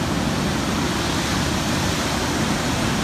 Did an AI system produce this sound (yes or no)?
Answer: no